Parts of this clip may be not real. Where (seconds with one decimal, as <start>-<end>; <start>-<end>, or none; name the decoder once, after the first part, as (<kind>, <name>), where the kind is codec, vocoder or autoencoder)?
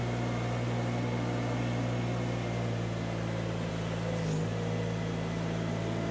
none